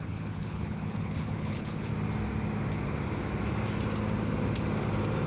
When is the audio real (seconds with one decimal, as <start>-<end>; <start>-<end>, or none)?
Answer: 1.9-5.3

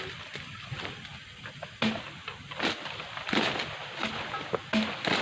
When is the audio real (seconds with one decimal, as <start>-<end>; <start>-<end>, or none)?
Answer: 0.0-5.2

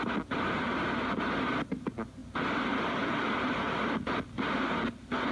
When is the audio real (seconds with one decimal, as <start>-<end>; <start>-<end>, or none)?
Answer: 0.0-5.3

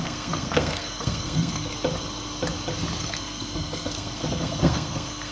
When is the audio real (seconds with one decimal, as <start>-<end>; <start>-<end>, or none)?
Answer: 1.7-3.0

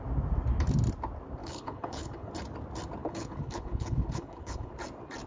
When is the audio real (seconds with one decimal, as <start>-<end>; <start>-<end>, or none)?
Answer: 0.0-1.4; 2.3-3.0; 4.7-5.3

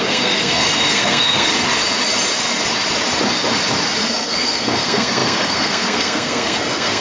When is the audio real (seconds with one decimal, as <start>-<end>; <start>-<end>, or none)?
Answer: 1.5-4.1

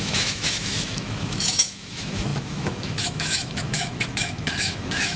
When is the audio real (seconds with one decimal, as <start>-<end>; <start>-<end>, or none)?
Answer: none

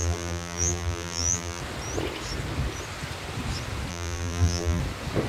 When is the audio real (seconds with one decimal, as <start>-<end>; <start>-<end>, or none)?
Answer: 1.6-3.9; 4.8-5.3